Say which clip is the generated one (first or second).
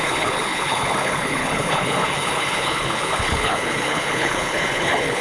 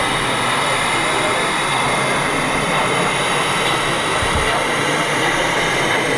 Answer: first